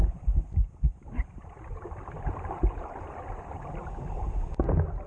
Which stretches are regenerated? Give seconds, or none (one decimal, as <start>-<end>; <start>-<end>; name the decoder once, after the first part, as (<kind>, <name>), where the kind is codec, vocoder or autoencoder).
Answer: 2.3-3.8 (vocoder, BigVGAN v2)